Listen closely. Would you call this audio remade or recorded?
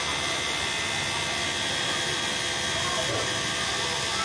recorded